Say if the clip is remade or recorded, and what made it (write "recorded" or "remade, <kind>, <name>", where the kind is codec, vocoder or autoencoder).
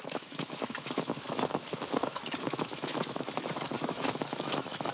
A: remade, autoencoder, DAC-VAE